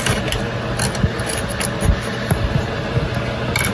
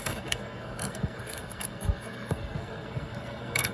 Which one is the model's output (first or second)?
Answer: second